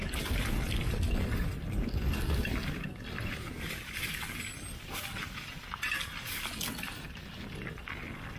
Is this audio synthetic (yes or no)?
no